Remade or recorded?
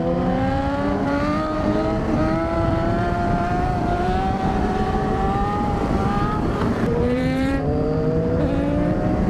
remade